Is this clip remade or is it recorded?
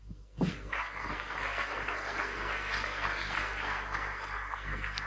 remade